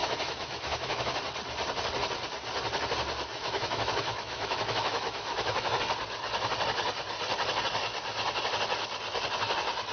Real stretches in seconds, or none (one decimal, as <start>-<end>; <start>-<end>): 1.2-3.3; 5.8-9.9